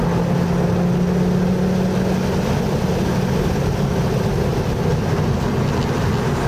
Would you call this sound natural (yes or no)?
yes